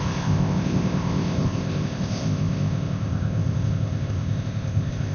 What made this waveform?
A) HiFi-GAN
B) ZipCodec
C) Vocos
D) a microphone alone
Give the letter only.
B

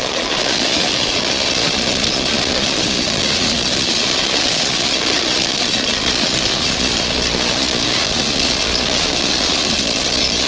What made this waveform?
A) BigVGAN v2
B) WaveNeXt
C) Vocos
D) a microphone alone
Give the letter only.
C